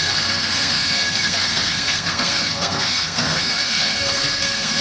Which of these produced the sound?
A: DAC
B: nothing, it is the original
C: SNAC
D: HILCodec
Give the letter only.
C